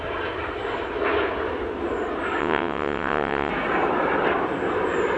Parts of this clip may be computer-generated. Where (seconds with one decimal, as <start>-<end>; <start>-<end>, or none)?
2.4-3.5